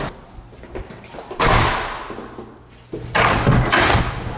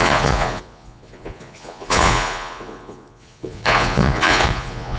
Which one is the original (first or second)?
first